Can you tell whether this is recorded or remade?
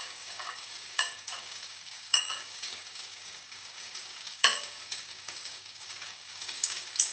remade